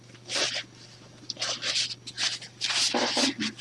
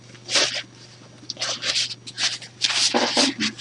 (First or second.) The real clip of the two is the second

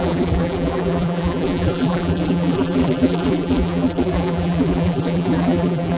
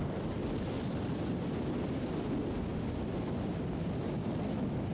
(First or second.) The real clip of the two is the second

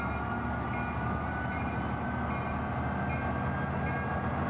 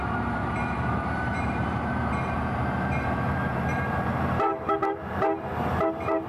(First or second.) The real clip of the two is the first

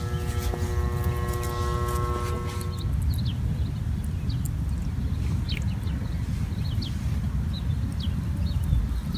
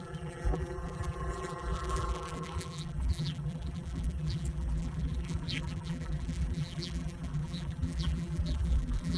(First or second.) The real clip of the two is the first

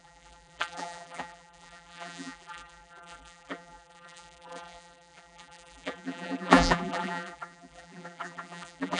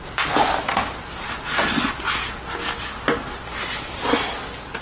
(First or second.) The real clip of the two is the second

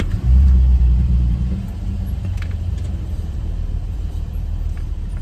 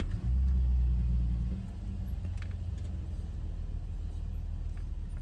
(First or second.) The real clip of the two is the second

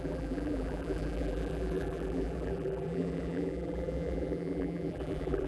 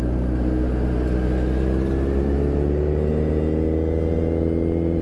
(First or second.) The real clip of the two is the second